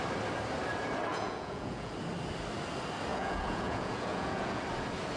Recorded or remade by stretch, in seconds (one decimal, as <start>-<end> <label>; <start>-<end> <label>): 0.0-1.1 recorded; 1.1-1.9 remade; 1.9-3.1 recorded; 3.1-4.6 remade; 4.6-5.2 recorded